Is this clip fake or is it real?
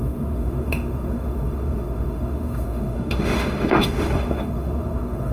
fake